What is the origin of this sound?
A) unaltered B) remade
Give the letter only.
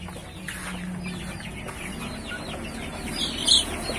A